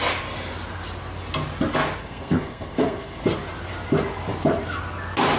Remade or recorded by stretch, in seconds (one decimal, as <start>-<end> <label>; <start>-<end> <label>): 0.0-2.0 recorded; 2.0-3.2 remade; 3.2-5.4 recorded

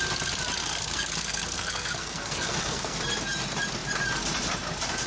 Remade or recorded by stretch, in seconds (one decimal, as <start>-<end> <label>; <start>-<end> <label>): 0.0-0.6 recorded; 0.6-3.0 remade; 3.0-5.1 recorded

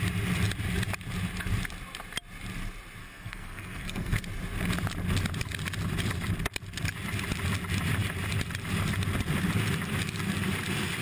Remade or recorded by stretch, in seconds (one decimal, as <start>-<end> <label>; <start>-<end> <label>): 0.0-3.0 recorded; 3.0-4.2 remade; 4.2-11.0 recorded

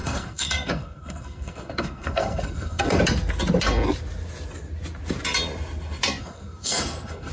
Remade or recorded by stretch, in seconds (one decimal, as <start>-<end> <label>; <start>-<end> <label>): 0.0-3.0 remade; 3.0-6.2 recorded; 6.2-7.3 remade

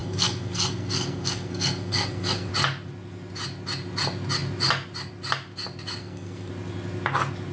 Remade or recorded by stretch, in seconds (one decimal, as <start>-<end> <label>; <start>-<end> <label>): 0.0-2.5 remade; 2.5-6.0 recorded; 6.0-6.5 remade; 6.5-7.5 recorded

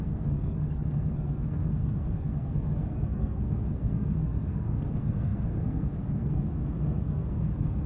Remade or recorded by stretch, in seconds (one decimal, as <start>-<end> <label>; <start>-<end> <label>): 0.0-7.9 remade

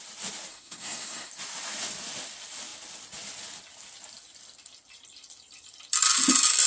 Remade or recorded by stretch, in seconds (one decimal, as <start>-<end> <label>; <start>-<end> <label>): 0.0-0.5 recorded; 0.5-1.3 remade; 1.3-6.7 recorded